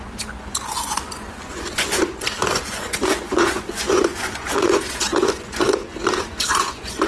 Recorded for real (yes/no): no